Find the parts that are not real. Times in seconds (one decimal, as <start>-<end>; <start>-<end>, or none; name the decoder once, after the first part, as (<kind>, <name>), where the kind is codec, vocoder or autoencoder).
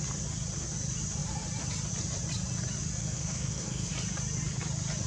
3.0-3.9 (codec, SNAC)